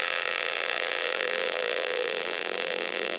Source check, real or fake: fake